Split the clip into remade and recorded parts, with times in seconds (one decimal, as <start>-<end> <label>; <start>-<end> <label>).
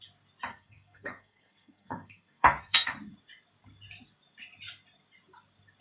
0.0-0.5 recorded; 0.5-2.9 remade; 2.9-5.8 recorded